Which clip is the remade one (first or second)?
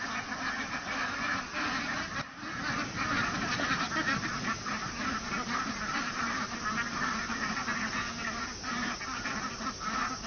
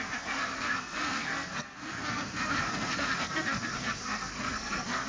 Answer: second